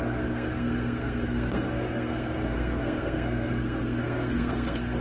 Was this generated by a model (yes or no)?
yes